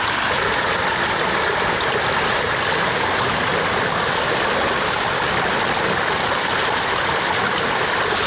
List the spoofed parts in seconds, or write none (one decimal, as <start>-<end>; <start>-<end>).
none